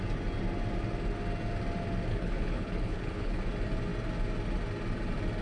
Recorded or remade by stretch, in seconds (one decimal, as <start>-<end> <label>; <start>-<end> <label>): 0.0-2.1 recorded; 2.1-3.4 remade; 3.4-5.4 recorded